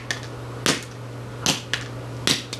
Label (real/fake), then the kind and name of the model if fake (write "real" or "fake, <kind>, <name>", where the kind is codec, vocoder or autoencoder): real